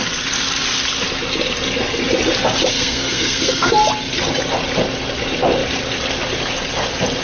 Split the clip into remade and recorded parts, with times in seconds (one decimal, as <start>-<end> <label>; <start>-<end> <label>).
0.0-2.7 recorded; 2.7-3.7 remade; 3.7-7.2 recorded

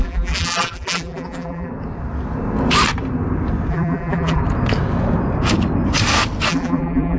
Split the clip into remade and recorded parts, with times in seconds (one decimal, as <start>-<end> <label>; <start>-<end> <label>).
0.0-1.7 remade; 1.7-3.7 recorded; 3.7-4.4 remade; 4.4-6.5 recorded; 6.5-7.2 remade

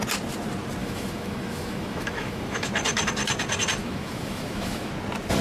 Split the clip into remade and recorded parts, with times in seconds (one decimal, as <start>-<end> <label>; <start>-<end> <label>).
0.0-0.8 recorded; 0.8-2.7 remade; 2.7-3.8 recorded; 3.8-4.9 remade; 4.9-5.4 recorded

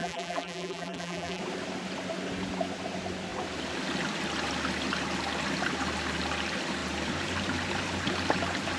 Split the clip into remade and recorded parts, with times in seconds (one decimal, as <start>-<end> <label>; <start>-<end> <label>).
0.0-1.4 remade; 1.4-8.8 recorded